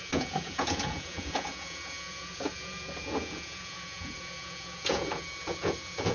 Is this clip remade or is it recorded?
remade